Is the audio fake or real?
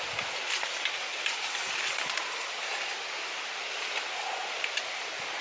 real